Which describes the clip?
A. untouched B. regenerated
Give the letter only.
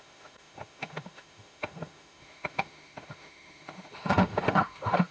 B